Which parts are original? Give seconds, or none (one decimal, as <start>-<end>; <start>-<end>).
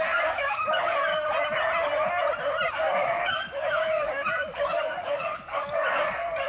1.1-2.7